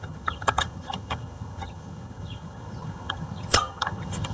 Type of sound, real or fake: fake